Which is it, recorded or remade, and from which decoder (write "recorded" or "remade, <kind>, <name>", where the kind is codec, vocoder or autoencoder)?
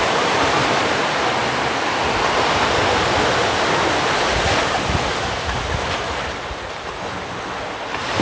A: recorded